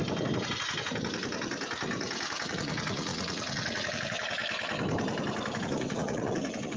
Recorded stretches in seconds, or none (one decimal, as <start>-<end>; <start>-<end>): 0.0-2.5; 4.4-5.6